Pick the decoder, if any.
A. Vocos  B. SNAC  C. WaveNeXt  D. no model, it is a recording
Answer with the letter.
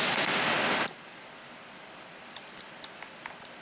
D